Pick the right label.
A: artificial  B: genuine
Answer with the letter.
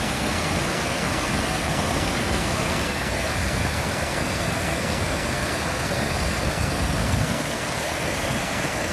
A